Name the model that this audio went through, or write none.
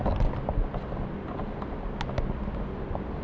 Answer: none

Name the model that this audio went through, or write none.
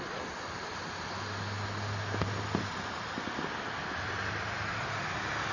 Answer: none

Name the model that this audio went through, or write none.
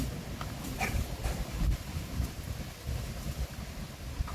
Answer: none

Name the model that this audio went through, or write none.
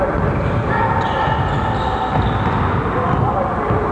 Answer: none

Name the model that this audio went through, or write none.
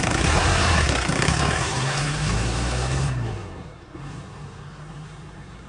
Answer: codec, SNAC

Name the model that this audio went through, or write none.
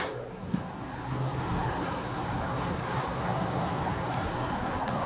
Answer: codec, SNAC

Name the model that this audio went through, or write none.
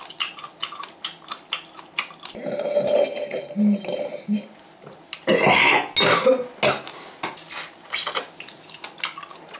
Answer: none